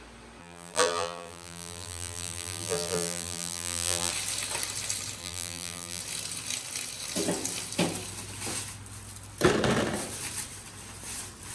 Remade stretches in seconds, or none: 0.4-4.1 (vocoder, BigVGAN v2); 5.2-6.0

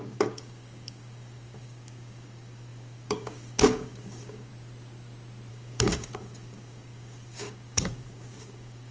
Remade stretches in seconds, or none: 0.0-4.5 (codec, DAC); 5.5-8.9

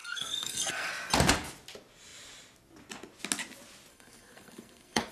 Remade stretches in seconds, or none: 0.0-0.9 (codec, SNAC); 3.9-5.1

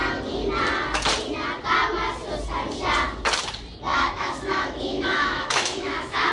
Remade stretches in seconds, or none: 3.9-6.3 (autoencoder, DAC-VAE)

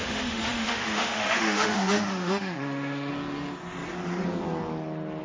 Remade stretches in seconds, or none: 0.0-3.1 (autoencoder, DAC-VAE)